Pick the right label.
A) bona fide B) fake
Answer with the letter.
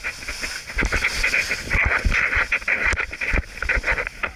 A